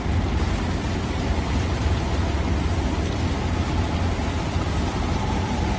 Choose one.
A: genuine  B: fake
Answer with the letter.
A